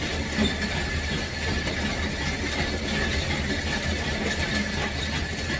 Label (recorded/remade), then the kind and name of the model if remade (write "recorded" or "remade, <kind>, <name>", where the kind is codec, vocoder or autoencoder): recorded